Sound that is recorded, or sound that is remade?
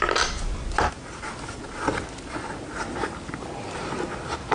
recorded